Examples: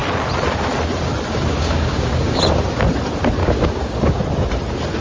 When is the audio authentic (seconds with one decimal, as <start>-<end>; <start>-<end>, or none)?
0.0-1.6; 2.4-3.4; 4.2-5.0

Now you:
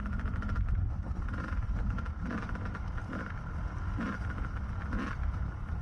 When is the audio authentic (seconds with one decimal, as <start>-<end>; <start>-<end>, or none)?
0.0-5.8

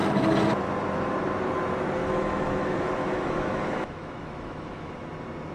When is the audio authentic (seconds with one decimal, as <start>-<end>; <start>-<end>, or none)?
0.0-2.0; 4.9-5.5

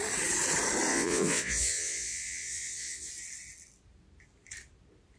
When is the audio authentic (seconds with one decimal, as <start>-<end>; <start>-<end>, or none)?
0.0-0.9; 3.1-5.2

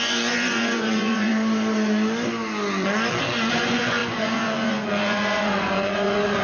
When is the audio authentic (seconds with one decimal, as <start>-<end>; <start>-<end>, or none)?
1.3-3.5

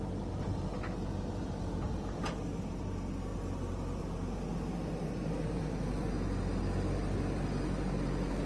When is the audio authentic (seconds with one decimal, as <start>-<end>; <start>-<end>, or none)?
0.0-8.5

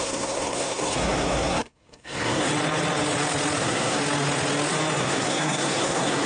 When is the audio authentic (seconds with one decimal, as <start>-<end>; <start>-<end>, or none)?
2.5-3.6; 4.0-5.0

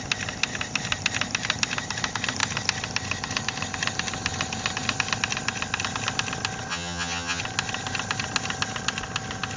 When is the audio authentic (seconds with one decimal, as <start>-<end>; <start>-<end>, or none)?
0.0-6.7; 7.4-9.6